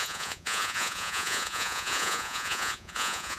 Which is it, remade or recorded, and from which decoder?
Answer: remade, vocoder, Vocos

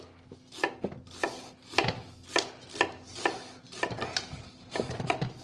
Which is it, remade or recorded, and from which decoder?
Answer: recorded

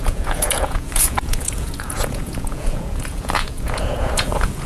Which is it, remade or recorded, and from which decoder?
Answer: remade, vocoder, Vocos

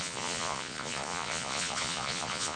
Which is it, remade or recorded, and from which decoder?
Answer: remade, vocoder, Vocos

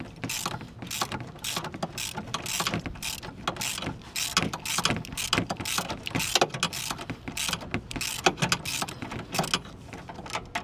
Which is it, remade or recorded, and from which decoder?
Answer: recorded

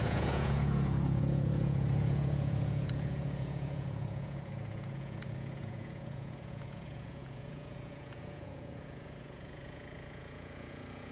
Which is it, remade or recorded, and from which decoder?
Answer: remade, vocoder, Vocos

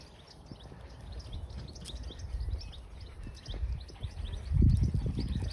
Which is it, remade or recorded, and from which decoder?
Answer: recorded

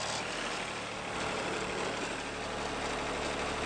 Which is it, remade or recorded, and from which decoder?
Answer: recorded